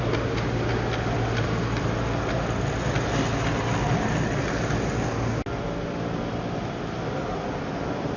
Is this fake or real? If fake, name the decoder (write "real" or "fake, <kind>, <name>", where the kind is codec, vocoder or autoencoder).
real